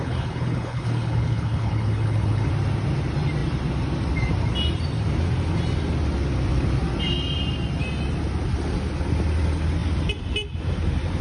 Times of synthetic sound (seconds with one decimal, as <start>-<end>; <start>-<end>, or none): 0.0-2.5